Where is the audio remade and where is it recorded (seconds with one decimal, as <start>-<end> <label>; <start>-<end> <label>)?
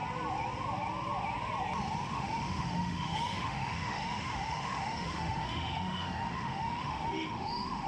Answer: 0.0-2.1 recorded; 2.1-7.9 remade